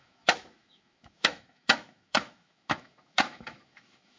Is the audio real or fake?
fake